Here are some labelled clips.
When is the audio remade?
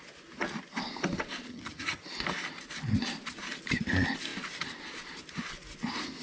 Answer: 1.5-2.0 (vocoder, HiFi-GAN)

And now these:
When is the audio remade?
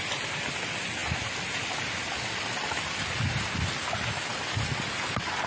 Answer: none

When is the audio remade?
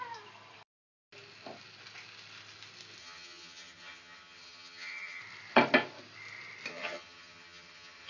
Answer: 3.0-5.2 (vocoder, HiFi-GAN); 6.7-8.1